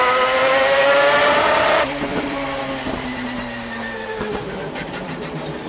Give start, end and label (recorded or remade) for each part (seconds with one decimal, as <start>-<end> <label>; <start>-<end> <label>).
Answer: 0.0-2.1 recorded; 2.1-2.6 remade; 2.6-4.8 recorded; 4.8-5.7 remade